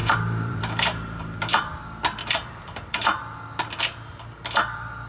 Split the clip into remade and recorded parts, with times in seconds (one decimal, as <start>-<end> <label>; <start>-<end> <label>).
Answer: 0.0-1.8 remade; 1.8-2.2 recorded; 2.2-3.2 remade; 3.2-5.1 recorded